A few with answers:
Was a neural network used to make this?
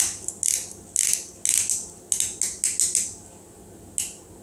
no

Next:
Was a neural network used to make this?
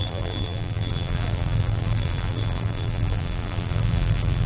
yes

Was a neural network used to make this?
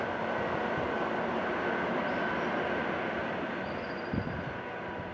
no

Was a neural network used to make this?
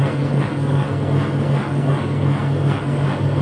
yes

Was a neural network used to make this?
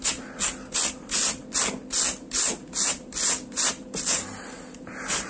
no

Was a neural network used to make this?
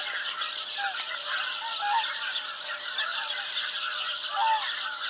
no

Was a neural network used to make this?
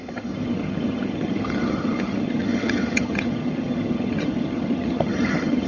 yes